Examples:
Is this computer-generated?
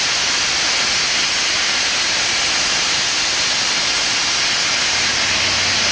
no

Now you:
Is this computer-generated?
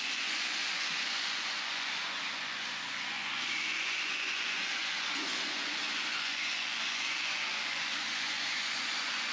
yes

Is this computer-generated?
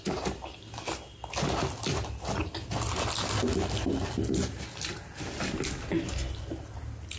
no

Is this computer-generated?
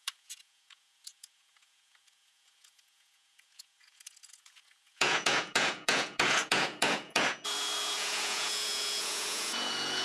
yes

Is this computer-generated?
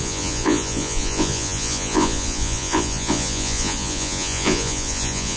yes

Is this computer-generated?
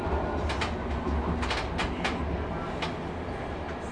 no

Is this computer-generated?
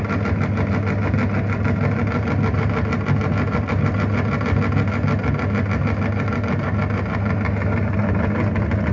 no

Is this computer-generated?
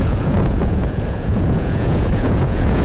yes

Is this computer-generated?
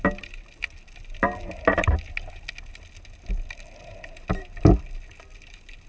no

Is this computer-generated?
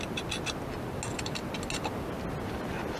no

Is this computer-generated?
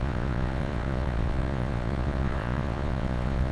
yes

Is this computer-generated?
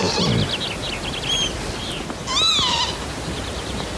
no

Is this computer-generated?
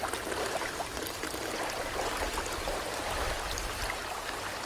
no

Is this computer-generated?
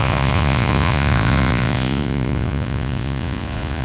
yes